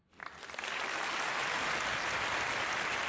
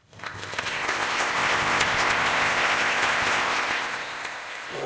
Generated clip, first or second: second